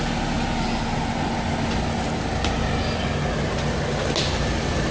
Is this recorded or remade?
recorded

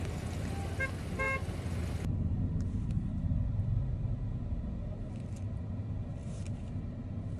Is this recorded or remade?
recorded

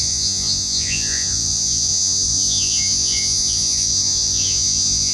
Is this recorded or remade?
remade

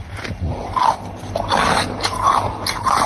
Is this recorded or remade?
recorded